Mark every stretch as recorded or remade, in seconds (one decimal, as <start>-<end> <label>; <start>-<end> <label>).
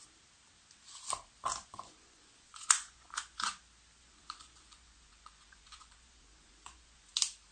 0.0-1.6 recorded; 1.6-3.6 remade; 3.6-4.0 recorded; 4.0-7.1 remade; 7.1-7.5 recorded